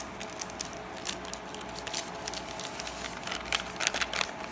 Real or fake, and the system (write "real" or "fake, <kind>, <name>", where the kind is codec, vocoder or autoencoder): real